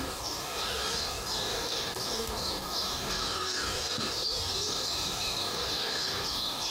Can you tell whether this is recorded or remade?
remade